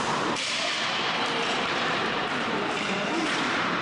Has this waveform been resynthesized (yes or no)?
yes